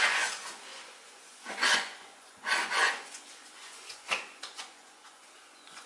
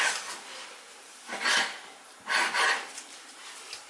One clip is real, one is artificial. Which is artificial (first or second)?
first